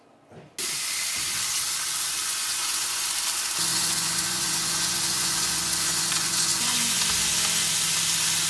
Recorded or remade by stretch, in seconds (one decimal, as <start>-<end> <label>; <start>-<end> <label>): 0.0-2.2 recorded; 2.2-3.0 remade; 3.0-3.7 recorded; 3.7-7.0 remade; 7.0-8.5 recorded